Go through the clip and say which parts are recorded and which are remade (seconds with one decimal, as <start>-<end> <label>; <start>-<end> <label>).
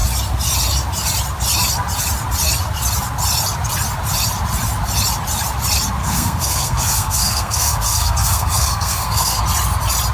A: 0.0-6.0 recorded; 6.0-9.4 remade; 9.4-10.1 recorded